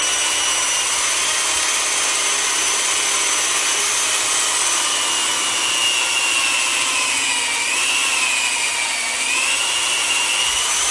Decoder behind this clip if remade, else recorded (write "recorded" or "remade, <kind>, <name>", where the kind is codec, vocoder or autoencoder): recorded